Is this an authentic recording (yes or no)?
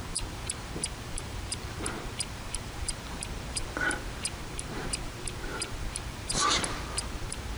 no